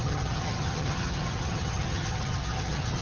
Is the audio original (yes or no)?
no